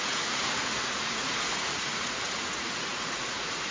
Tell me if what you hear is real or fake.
fake